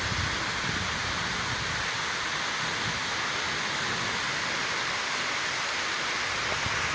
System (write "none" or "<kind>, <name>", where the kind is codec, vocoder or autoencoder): none